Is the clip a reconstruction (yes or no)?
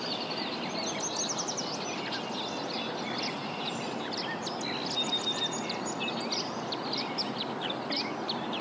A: no